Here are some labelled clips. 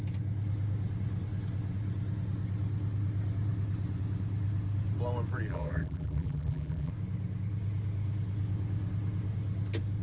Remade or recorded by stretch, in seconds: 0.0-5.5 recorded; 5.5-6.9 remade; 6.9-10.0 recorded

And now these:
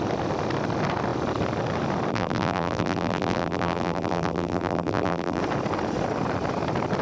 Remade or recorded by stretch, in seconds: 0.0-2.1 recorded; 2.1-5.4 remade; 5.4-7.0 recorded

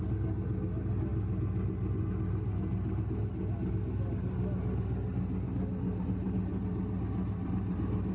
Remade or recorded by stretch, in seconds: 0.0-8.1 recorded

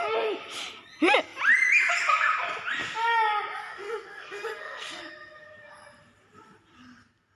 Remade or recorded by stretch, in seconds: 0.0-3.6 recorded; 3.6-5.0 remade; 5.0-7.4 recorded

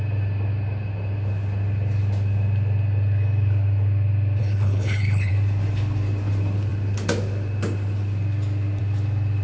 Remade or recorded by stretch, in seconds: 0.0-4.4 recorded; 4.4-5.3 remade; 5.3-9.4 recorded